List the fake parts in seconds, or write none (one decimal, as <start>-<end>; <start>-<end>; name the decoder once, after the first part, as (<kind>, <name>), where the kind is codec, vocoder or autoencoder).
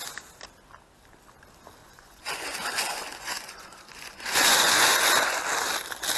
1.8-5.4 (vocoder, Vocos)